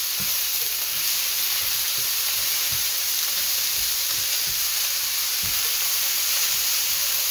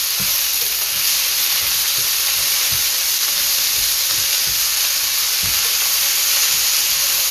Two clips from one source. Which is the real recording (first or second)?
second